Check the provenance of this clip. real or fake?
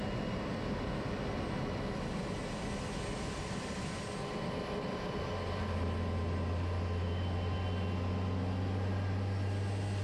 real